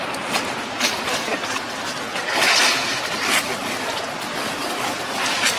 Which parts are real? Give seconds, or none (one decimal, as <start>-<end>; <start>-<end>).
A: 0.0-5.6

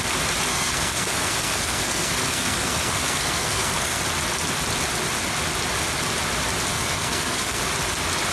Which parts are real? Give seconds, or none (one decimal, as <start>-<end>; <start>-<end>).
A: 0.0-0.5; 4.0-6.7; 7.6-8.3